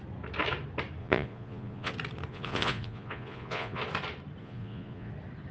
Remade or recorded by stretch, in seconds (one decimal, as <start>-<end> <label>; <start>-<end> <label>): 0.0-1.0 recorded; 1.0-1.9 remade; 1.9-2.3 recorded; 2.3-3.8 remade; 3.8-4.4 recorded; 4.4-5.1 remade; 5.1-5.5 recorded